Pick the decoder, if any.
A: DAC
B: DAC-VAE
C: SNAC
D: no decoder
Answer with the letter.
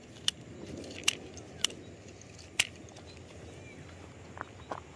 D